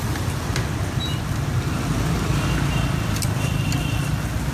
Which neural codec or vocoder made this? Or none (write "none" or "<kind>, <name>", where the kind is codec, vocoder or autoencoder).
none